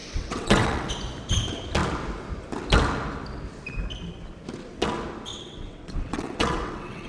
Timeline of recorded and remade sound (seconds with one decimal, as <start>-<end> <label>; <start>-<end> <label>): 0.0-0.9 remade; 0.9-5.3 recorded; 5.3-7.1 remade